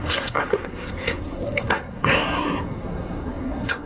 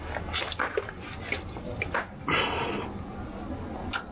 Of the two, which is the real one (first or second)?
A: second